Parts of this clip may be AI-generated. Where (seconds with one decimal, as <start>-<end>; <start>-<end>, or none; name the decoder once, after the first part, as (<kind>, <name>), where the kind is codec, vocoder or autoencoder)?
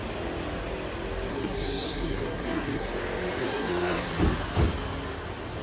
1.3-2.9 (codec, SNAC); 3.4-4.1